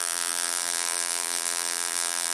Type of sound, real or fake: fake